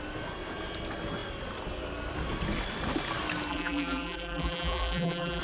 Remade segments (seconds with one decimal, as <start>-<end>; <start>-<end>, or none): 3.5-5.4